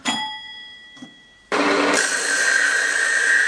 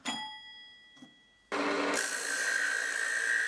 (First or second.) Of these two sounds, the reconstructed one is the first